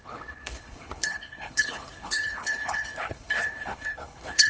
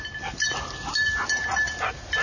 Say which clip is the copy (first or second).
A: first